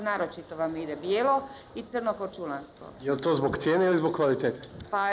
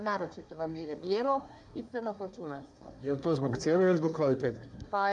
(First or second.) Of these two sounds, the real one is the first